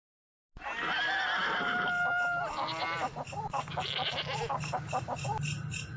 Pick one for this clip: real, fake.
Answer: real